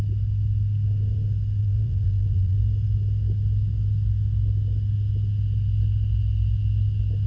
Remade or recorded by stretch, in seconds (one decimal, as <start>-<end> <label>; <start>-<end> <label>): 0.0-1.6 recorded; 1.6-2.6 remade; 2.6-7.3 recorded